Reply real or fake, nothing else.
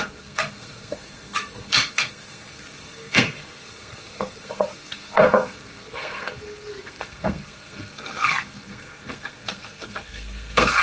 fake